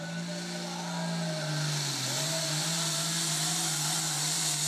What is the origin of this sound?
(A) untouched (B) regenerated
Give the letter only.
A